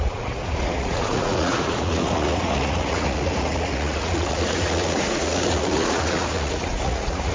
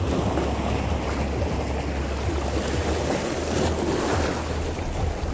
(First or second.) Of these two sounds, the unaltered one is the second